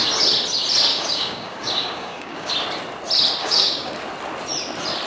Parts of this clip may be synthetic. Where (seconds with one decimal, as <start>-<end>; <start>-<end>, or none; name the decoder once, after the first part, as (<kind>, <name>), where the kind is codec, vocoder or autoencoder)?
0.9-2.5 (codec, DAC); 3.4-3.9